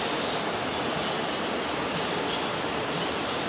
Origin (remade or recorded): recorded